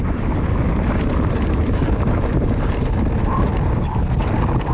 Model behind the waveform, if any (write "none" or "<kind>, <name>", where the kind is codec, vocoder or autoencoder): none